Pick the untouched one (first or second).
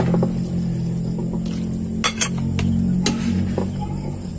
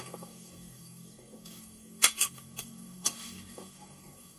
first